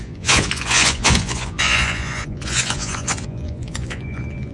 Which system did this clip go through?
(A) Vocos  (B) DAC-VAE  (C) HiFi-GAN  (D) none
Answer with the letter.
A